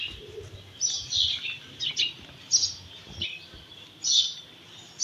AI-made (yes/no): no